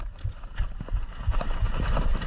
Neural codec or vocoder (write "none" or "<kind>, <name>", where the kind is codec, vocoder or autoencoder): none